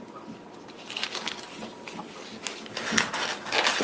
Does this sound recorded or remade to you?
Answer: recorded